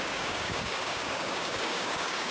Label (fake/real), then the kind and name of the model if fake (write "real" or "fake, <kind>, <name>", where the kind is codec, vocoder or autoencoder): fake, codec, DAC